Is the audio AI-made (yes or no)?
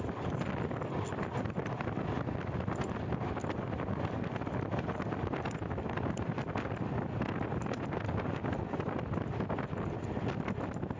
no